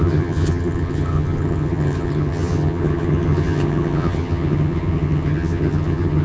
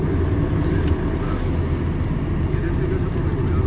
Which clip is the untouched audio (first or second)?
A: second